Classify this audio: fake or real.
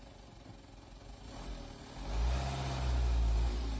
real